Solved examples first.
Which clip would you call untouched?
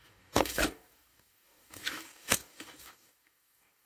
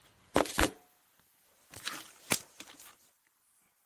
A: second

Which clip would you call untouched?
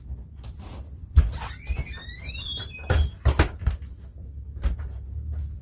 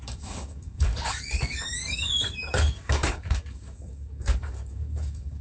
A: first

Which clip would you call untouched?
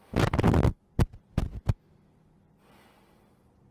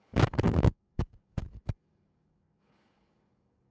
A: first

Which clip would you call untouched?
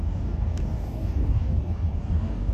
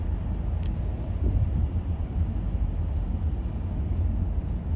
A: second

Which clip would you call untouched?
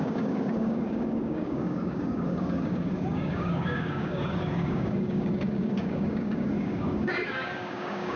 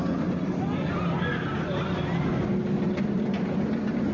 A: second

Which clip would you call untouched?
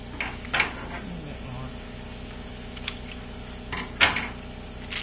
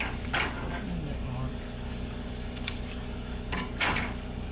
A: first